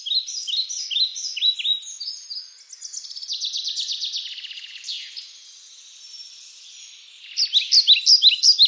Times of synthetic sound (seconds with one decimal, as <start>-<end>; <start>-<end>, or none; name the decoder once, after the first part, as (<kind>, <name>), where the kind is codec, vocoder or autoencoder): none